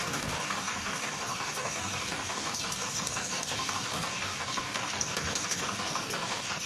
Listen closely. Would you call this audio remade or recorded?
remade